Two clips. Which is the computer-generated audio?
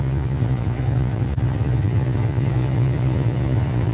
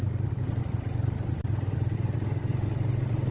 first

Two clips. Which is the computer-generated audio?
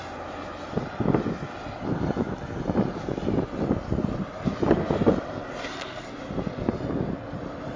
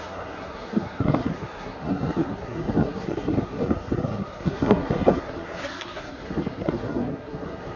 second